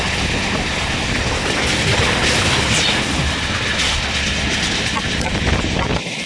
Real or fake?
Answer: real